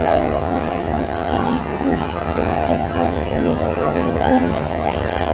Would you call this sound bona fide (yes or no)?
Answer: no